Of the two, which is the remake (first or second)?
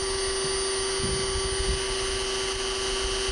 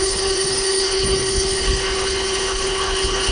second